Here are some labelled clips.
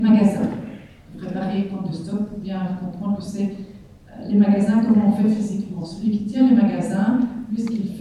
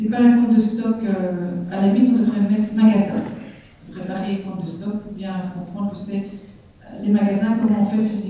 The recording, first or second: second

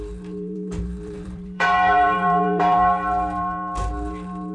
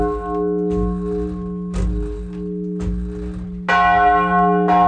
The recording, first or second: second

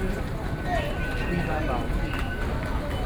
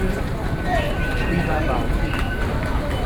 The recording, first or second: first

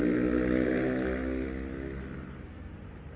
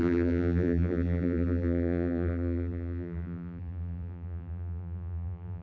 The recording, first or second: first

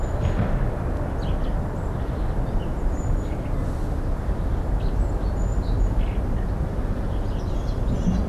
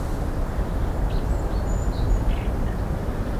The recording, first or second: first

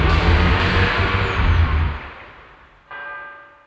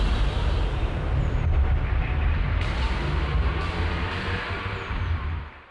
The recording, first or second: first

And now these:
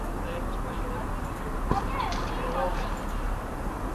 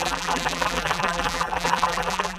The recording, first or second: first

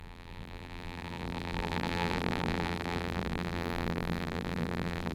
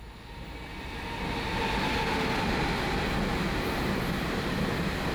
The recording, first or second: second